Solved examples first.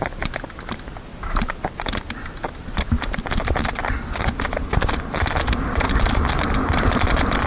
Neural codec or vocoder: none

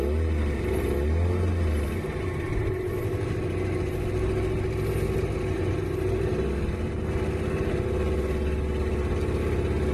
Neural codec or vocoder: none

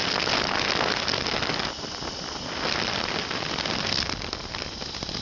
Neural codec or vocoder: none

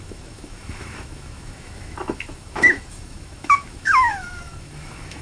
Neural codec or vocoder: autoencoder, DAC-VAE